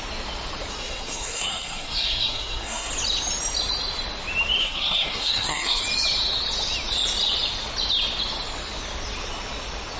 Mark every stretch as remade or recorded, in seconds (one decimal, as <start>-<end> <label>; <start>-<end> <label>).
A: 0.0-0.7 recorded; 0.7-2.9 remade; 2.9-4.6 recorded; 4.6-5.8 remade; 5.8-10.0 recorded